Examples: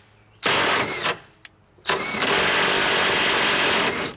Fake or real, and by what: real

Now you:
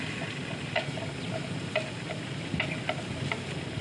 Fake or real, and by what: real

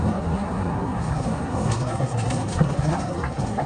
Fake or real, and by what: fake, codec, SNAC